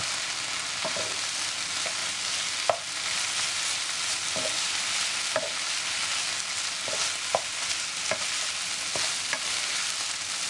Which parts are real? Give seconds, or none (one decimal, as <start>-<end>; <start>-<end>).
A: 0.0-10.5